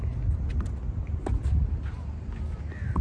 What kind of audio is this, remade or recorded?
recorded